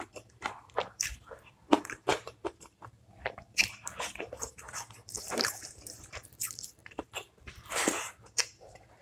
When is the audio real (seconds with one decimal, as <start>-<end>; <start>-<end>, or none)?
none